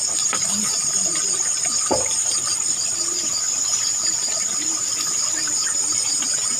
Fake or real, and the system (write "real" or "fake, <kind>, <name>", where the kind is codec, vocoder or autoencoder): fake, vocoder, BigVGAN v2